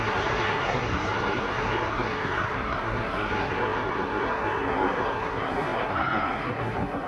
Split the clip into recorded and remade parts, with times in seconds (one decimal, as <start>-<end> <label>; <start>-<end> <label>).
0.0-7.1 remade

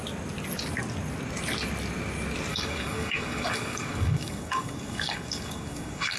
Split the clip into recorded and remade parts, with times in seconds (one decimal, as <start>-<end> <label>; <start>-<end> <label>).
0.0-2.5 recorded; 2.5-6.2 remade

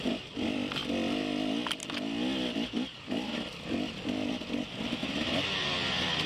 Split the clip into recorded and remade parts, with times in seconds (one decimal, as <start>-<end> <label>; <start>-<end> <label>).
0.0-0.8 remade; 0.8-4.6 recorded; 4.6-6.3 remade

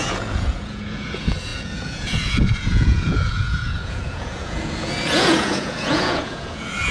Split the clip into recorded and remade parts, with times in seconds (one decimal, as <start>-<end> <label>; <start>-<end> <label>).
0.0-6.9 remade